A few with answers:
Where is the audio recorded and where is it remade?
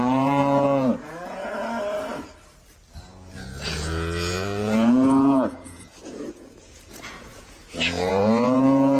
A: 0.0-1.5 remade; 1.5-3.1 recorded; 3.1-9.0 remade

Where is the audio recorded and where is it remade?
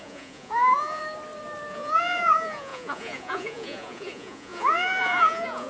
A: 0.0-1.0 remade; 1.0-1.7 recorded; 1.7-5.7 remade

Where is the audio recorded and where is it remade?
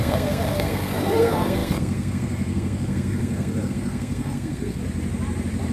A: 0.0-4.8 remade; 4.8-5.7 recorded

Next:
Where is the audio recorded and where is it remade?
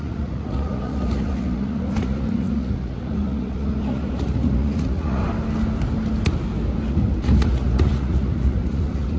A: 0.0-5.2 remade; 5.2-6.9 recorded; 6.9-9.2 remade